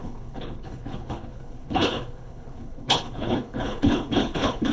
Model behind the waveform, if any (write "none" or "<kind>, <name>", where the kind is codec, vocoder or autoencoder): codec, HILCodec